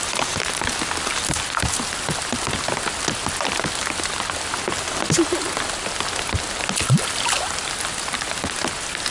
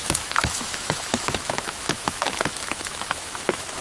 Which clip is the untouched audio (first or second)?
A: first